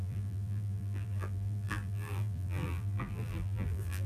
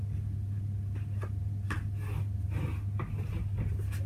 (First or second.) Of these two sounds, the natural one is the second